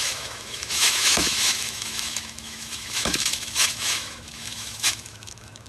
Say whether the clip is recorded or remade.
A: remade